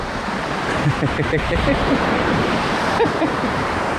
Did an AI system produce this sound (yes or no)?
yes